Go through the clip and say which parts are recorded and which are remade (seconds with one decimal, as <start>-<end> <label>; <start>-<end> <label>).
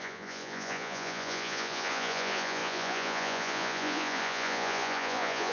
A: 0.0-5.5 remade